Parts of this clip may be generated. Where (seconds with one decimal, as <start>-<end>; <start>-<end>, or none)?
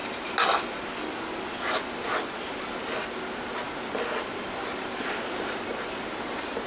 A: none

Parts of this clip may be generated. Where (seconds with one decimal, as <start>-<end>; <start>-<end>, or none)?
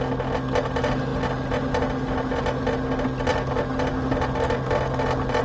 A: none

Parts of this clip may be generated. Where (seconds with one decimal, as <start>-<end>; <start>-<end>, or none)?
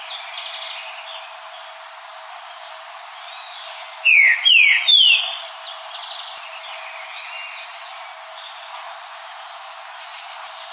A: none